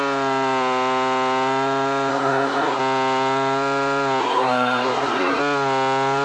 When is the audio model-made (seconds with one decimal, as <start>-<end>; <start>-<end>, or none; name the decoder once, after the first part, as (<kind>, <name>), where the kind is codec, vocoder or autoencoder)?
2.1-2.8 (codec, SNAC); 4.2-5.4